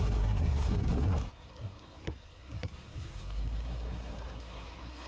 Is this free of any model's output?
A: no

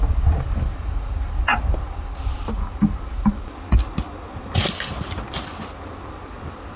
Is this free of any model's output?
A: yes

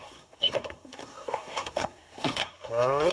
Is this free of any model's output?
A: no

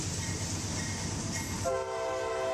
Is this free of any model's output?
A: yes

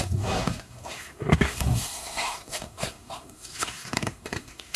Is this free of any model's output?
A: no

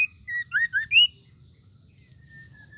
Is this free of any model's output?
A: yes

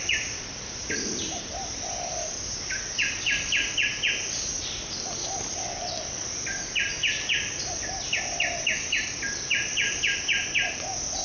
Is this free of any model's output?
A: yes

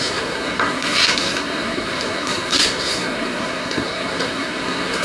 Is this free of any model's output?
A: no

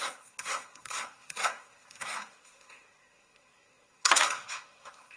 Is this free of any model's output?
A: no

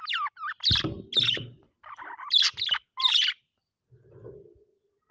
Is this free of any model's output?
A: yes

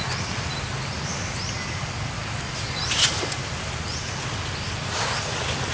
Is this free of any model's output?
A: yes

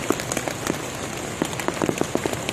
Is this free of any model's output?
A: yes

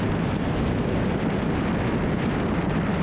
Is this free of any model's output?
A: yes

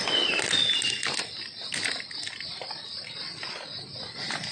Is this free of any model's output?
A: yes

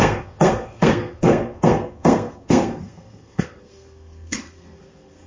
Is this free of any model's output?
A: no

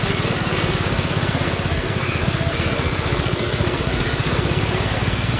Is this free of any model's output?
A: no